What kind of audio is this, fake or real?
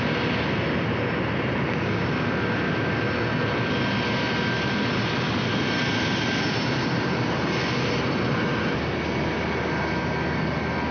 real